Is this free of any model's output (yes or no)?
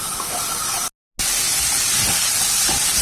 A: yes